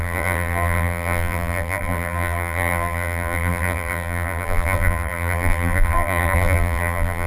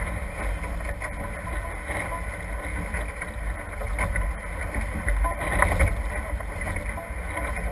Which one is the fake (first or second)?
first